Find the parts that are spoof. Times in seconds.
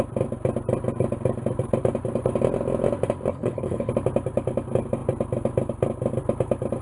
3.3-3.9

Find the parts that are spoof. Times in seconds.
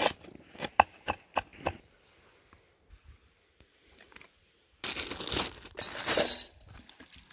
none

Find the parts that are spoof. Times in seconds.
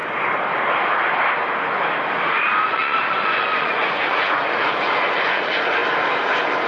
2.3-5.8